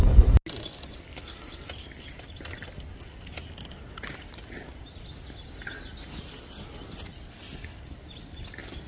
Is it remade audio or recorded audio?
recorded